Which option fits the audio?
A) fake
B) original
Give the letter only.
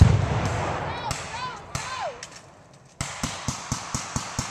B